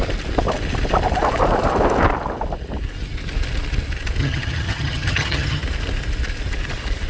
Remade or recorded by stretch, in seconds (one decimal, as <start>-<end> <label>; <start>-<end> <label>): 0.0-4.2 recorded; 4.2-5.6 remade; 5.6-7.1 recorded